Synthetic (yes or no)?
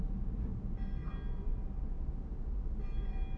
no